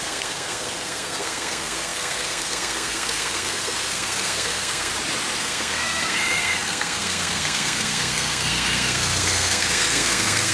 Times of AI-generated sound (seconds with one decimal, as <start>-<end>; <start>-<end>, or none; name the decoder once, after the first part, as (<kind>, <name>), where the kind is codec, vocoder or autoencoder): 0.0-4.9 (codec, SNAC); 5.4-10.5